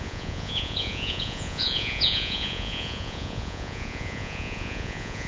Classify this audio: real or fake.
fake